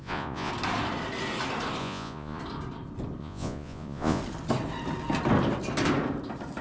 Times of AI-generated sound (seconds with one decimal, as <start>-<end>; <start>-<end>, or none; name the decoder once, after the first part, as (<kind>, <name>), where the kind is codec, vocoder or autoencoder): 0.0-0.5 (vocoder, Vocos); 1.8-2.4; 3.2-4.2